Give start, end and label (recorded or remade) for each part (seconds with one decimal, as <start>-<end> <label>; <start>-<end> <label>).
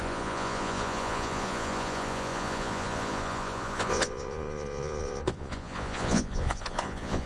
0.0-7.3 remade